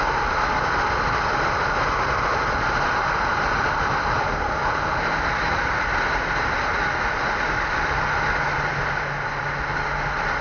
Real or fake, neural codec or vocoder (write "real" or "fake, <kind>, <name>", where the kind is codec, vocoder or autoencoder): real